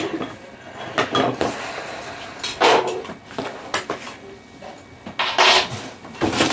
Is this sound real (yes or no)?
yes